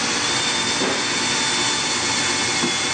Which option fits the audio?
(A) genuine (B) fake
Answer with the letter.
A